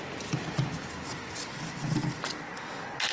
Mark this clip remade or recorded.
recorded